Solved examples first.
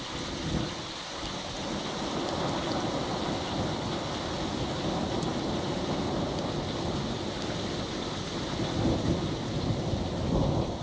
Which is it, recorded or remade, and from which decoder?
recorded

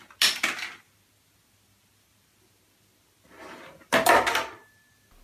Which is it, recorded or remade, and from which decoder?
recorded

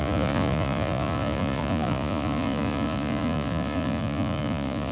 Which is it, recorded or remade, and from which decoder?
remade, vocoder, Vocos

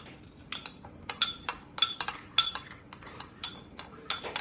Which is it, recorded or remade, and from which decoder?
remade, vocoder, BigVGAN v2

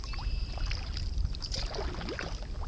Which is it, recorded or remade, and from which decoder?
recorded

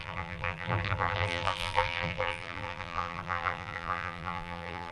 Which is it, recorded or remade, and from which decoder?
remade, vocoder, BigVGAN v2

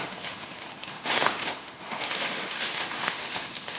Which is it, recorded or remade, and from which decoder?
remade, autoencoder, DAC-VAE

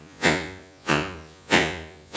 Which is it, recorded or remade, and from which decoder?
remade, vocoder, Vocos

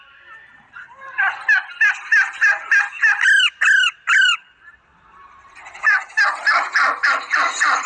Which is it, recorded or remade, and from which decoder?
recorded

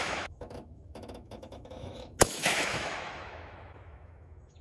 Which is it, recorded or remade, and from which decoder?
remade, autoencoder, DAC-VAE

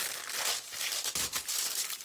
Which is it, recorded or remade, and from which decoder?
remade, vocoder, BigVGAN v2